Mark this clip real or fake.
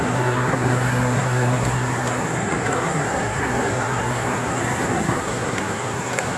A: fake